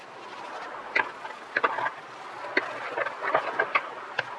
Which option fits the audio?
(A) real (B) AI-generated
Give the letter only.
A